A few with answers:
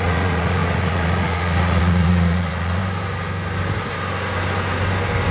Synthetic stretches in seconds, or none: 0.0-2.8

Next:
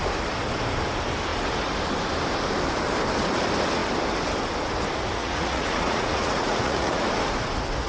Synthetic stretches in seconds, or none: 5.2-7.0

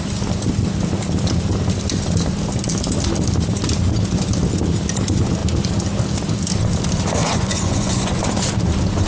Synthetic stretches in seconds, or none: 7.2-8.2